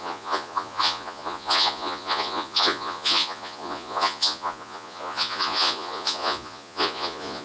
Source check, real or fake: fake